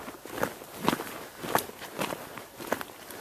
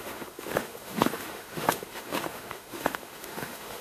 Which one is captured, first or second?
first